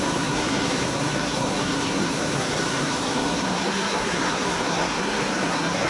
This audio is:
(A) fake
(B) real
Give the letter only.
A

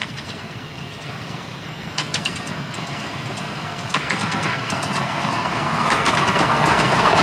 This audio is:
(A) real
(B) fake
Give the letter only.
B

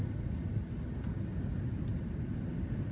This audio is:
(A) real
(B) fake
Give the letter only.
A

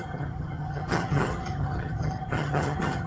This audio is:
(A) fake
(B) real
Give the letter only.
A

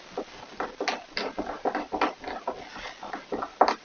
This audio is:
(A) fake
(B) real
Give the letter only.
B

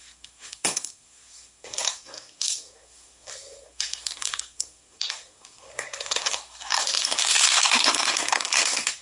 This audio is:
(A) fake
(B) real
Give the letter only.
A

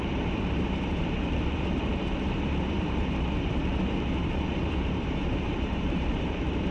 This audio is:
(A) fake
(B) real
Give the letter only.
A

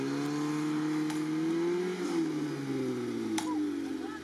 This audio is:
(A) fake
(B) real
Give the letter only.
B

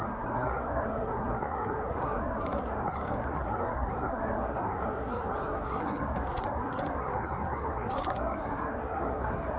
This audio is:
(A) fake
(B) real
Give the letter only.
A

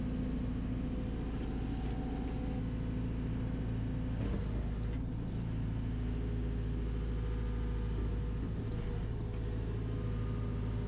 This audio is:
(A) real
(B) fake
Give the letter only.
A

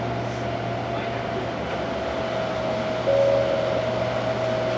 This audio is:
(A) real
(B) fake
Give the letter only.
A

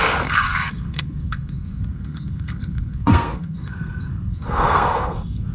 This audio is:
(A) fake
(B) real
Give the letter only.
A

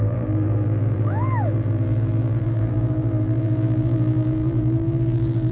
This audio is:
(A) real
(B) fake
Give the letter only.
B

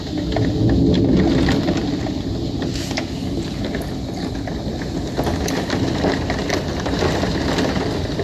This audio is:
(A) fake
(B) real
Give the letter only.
B